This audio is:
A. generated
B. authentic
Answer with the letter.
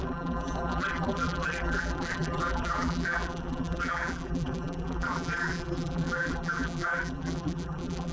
A